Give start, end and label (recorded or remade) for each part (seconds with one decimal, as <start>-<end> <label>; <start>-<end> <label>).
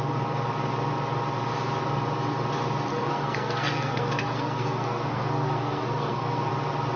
0.0-2.9 recorded; 2.9-6.5 remade; 6.5-7.0 recorded